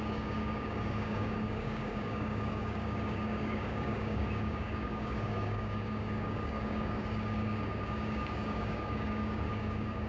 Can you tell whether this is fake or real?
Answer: fake